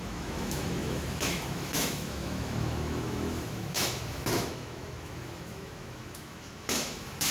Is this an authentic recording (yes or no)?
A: no